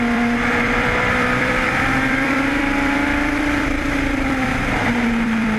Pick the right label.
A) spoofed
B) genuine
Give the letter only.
A